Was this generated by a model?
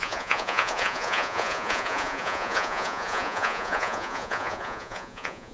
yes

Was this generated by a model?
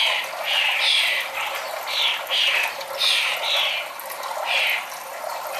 no